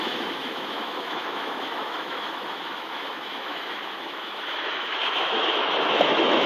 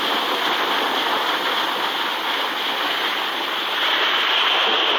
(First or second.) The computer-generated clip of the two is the first